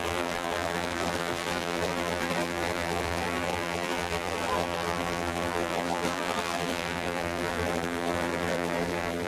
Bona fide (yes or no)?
no